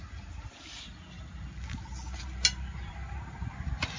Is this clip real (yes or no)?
yes